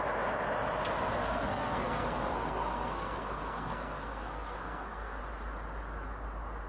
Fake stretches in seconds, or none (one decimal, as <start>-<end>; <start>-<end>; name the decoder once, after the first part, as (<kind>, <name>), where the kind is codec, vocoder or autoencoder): 1.2-5.2 (codec, SNAC)